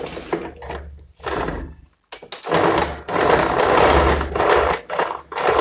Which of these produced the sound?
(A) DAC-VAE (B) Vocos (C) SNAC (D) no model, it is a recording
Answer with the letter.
D